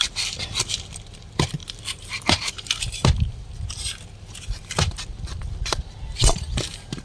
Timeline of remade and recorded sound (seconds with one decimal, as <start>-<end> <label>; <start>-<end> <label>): 0.0-7.0 remade